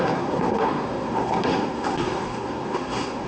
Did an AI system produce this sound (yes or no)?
yes